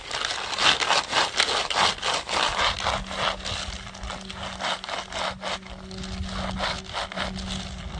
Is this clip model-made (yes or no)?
no